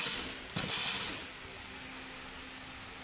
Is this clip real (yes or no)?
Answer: yes